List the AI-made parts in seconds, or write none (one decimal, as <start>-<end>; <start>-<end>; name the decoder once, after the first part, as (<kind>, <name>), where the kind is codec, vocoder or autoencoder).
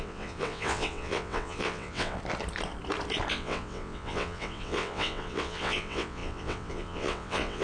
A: 0.0-2.2 (vocoder, WaveNeXt); 3.3-7.6